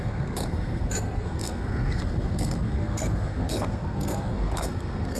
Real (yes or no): no